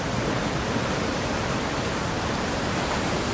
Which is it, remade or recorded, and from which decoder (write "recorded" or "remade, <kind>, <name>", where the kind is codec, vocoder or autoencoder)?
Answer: recorded